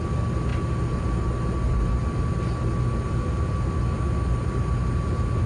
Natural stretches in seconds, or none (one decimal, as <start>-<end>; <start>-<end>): 0.0-5.5